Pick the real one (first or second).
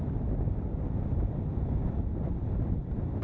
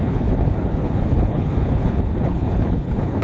first